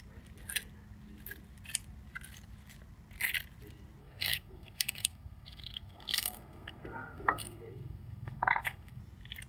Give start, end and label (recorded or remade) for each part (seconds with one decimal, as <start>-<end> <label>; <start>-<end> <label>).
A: 0.0-4.0 recorded; 4.0-9.0 remade; 9.0-9.5 recorded